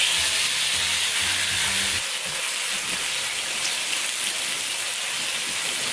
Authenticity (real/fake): real